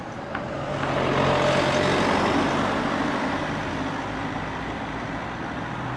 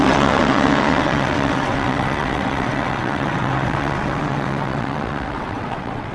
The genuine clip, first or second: first